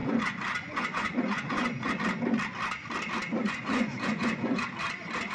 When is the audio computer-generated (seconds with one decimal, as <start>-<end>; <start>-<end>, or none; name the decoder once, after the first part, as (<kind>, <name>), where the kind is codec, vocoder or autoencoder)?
0.0-1.9 (vocoder, Vocos); 3.3-4.6